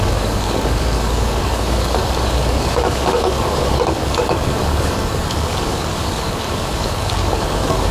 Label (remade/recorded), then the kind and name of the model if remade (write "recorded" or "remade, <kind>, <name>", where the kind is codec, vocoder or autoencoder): remade, codec, DAC